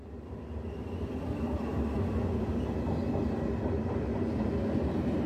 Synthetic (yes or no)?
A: no